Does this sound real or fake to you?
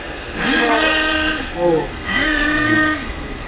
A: fake